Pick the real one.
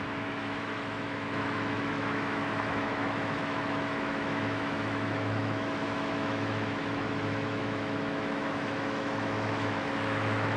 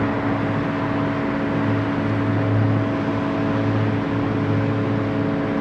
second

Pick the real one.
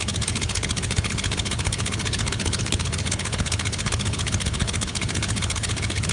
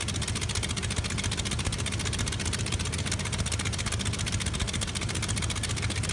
second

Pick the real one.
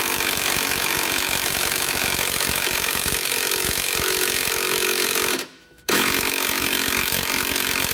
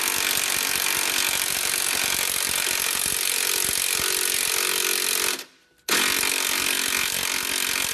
second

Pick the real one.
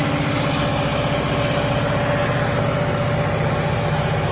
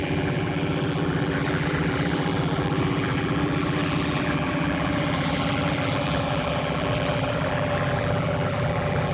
first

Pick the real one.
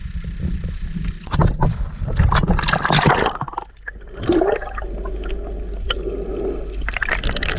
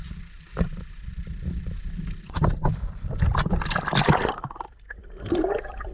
first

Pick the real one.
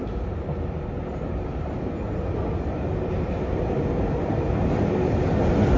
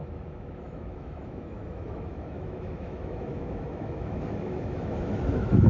first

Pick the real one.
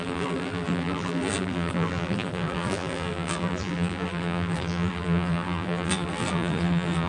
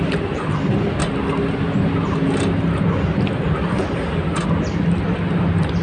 second